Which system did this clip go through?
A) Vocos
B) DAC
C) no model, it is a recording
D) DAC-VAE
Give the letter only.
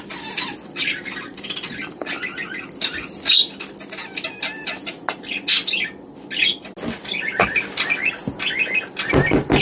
C